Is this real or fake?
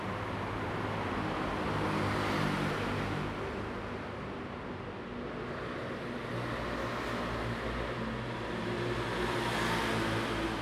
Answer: real